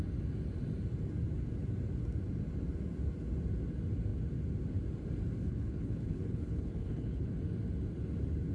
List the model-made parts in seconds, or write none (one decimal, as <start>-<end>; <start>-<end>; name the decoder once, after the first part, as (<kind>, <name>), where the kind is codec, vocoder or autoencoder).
5.4-7.3 (codec, HILCodec)

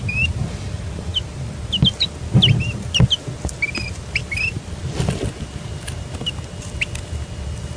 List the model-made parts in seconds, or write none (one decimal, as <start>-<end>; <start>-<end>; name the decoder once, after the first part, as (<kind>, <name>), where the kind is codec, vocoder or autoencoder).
none

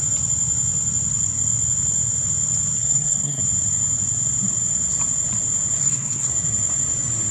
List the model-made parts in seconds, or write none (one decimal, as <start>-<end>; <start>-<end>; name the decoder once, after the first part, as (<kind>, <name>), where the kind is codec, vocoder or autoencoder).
2.8-3.4 (codec, SNAC); 5.8-6.3

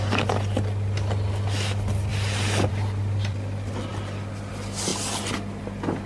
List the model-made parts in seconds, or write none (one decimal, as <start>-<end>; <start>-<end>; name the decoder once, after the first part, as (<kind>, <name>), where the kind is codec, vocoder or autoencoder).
none

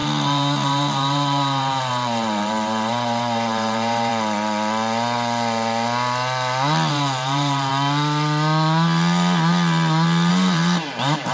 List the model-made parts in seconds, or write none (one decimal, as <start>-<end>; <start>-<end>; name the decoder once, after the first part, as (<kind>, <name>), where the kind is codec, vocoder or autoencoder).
0.0-4.1 (vocoder, BigVGAN v2); 6.9-7.7; 10.3-11.3